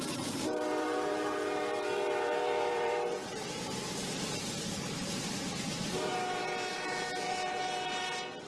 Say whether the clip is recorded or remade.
remade